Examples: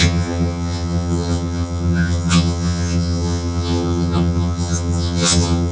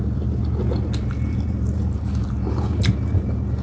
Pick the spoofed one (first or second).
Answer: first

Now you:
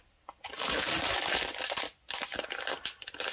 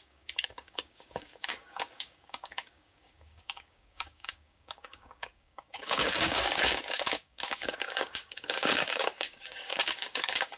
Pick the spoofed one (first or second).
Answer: second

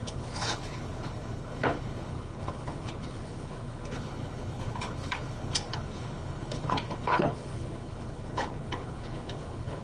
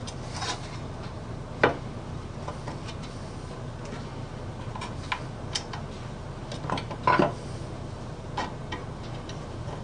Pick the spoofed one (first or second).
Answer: first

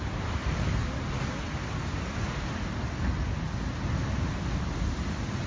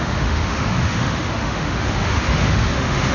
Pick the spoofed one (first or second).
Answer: second